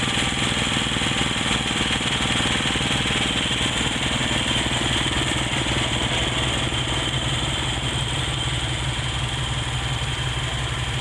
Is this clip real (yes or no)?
yes